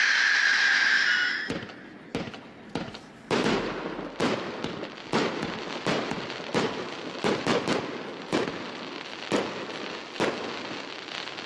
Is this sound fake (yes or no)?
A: no